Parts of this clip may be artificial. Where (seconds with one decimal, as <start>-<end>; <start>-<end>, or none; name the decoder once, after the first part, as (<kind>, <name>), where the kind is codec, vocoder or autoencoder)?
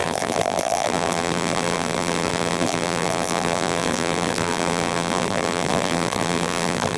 0.0-7.0 (vocoder, BigVGAN v2)